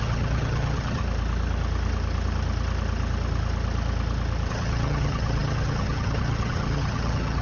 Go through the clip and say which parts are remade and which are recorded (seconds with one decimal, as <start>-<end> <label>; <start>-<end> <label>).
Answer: 0.0-1.0 remade; 1.0-4.5 recorded; 4.5-7.4 remade